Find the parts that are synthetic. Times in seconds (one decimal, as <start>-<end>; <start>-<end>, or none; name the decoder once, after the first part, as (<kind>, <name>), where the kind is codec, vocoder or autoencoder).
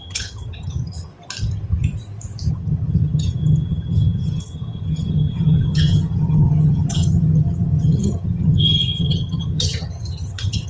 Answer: 0.0-1.1 (vocoder, HiFi-GAN); 2.5-10.7